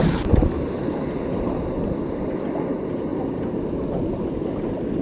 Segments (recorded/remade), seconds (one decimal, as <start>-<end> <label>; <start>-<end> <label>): 0.0-5.0 recorded